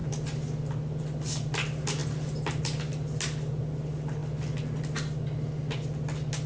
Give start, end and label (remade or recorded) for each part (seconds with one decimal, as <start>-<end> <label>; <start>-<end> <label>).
0.0-6.5 recorded